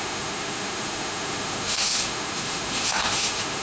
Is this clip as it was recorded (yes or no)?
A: no